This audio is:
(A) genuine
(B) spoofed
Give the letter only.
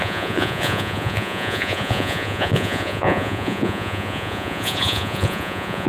B